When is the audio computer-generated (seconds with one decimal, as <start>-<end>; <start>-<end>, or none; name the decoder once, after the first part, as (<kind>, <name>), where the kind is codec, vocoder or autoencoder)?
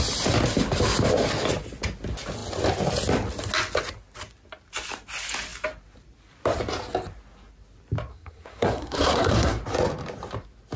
8.1-9.6 (codec, SNAC)